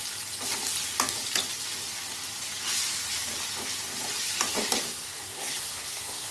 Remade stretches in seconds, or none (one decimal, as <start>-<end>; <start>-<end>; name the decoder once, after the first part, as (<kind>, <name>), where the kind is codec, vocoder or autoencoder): 4.8-6.3 (codec, SNAC)

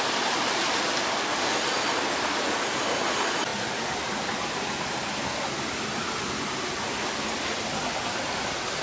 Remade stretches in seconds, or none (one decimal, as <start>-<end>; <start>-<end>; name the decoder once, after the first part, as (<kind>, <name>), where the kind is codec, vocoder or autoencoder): none

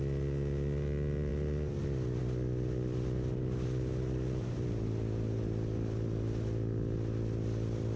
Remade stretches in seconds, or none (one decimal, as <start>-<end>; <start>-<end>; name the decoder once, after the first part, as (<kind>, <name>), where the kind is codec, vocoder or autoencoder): none

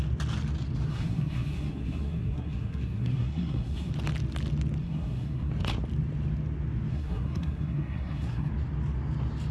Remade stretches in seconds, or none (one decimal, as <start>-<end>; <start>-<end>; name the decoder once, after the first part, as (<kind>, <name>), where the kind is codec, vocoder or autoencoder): 0.9-3.9 (codec, SNAC); 4.8-5.5; 6.9-8.5

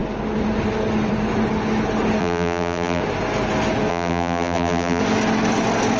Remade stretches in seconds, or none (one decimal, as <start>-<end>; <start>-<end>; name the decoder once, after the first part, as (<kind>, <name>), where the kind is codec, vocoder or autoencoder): 2.2-3.0 (vocoder, BigVGAN v2); 3.9-5.0

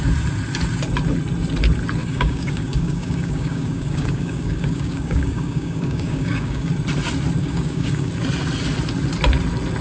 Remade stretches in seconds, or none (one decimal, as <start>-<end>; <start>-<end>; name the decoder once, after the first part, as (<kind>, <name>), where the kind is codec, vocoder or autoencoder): 2.0-6.7 (codec, DAC); 7.4-8.1

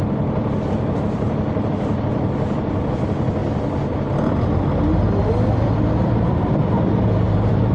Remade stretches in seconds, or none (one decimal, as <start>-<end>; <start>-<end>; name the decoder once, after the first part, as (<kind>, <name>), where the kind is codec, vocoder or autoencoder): 0.0-3.4 (vocoder, BigVGAN v2); 5.2-7.7